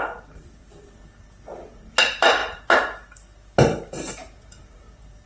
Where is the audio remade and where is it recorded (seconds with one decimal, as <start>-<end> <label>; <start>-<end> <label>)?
0.0-5.3 recorded